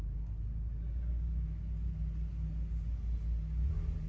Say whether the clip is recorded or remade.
recorded